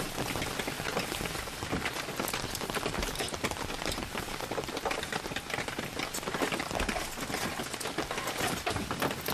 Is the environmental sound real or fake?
real